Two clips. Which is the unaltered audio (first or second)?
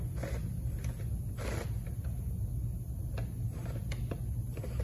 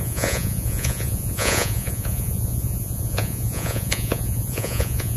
first